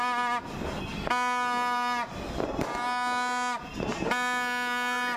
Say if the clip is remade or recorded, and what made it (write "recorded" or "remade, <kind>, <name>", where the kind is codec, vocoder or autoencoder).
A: recorded